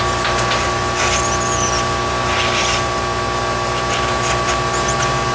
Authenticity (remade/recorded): recorded